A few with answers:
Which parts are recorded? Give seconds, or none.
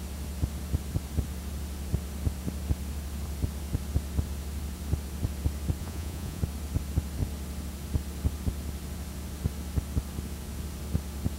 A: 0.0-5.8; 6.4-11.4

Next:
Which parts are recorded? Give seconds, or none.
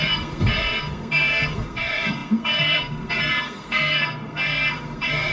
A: none